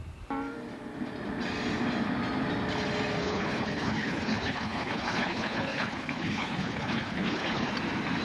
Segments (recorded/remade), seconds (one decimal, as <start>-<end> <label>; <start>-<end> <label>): 0.0-3.2 recorded; 3.2-7.7 remade; 7.7-8.2 recorded